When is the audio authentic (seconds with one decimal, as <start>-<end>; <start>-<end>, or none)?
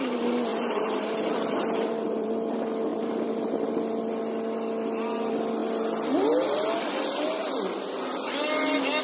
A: 0.0-0.5; 2.3-2.9; 3.7-9.0